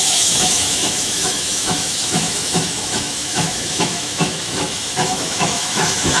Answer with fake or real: fake